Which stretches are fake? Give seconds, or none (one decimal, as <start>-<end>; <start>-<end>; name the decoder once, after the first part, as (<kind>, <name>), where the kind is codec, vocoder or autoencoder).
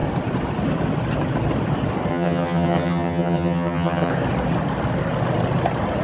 2.1-4.1 (vocoder, HiFi-GAN)